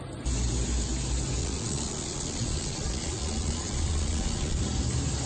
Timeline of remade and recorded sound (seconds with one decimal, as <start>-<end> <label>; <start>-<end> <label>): 0.0-1.4 recorded; 1.4-4.6 remade; 4.6-5.3 recorded